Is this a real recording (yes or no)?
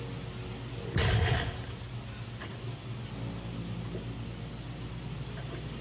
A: yes